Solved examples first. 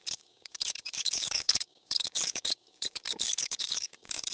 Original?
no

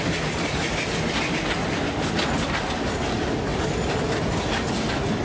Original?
yes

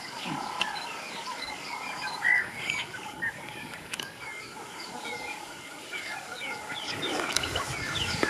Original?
no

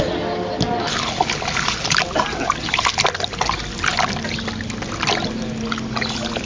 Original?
yes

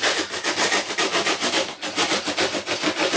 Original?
yes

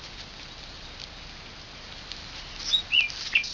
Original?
yes